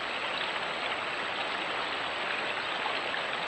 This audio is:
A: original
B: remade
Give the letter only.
A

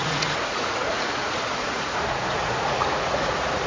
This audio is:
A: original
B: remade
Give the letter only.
B